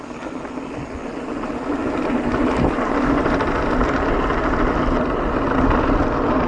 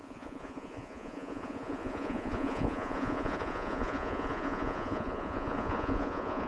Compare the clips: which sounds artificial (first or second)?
second